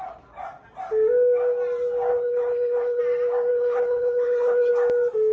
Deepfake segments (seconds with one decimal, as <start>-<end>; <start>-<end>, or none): 2.1-3.0; 3.5-4.7